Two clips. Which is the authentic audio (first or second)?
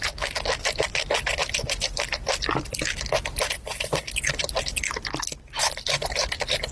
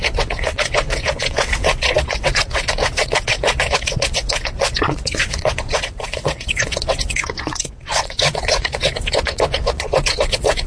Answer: first